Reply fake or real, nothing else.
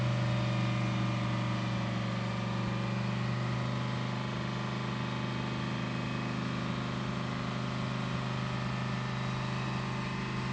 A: real